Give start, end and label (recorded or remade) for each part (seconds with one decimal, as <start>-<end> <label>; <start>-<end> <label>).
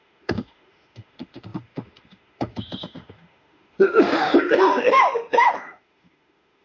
0.0-6.6 remade